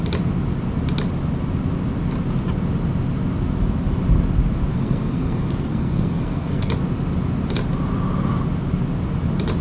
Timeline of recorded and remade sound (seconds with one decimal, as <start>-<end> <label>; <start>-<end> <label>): 0.0-4.7 recorded; 4.7-6.7 remade; 6.7-9.6 recorded